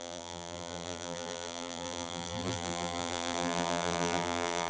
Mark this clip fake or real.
fake